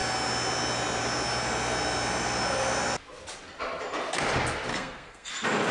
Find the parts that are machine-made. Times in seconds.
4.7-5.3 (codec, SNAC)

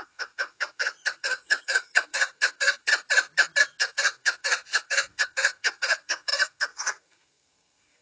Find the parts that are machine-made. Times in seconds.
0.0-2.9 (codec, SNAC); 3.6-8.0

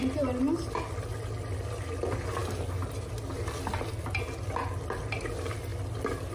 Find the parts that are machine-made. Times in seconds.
none

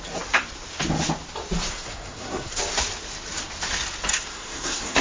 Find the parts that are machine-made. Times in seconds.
1.7-2.6 (codec, SNAC); 4.1-5.0

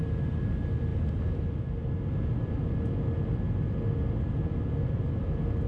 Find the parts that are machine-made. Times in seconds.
none

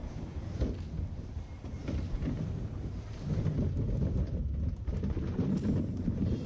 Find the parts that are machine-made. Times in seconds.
none